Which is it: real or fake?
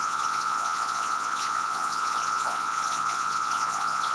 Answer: fake